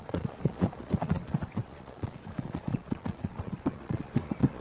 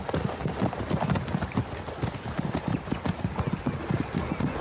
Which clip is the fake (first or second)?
first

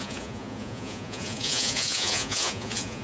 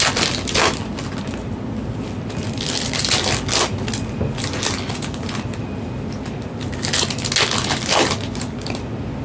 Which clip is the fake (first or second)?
first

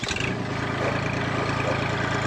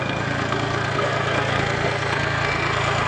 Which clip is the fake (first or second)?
second